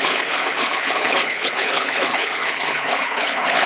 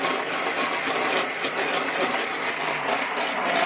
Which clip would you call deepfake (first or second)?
first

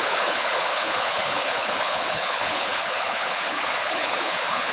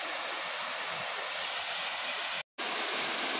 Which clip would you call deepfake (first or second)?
first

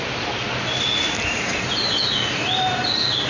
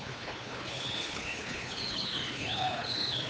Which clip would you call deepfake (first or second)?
second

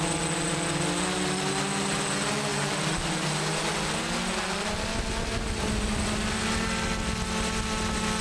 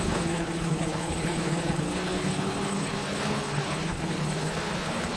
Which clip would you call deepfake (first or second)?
second